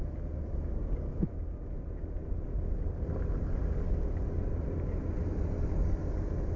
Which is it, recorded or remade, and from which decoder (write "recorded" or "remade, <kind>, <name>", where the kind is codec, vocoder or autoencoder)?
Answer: recorded